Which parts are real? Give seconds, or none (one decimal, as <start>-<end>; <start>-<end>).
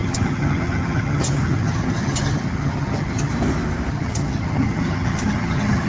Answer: 3.3-3.9